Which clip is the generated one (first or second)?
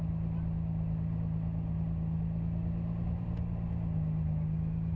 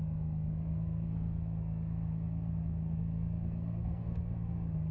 second